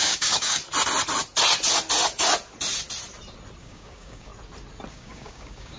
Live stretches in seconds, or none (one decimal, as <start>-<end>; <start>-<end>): 0.6-3.6; 4.3-4.9